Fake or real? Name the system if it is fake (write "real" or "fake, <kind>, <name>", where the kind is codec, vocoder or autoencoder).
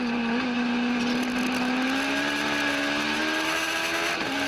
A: real